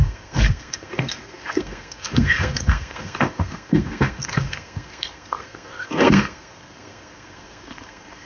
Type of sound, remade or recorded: remade